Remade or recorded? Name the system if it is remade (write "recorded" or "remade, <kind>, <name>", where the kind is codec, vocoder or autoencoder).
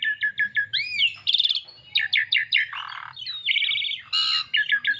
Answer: remade, vocoder, BigVGAN v2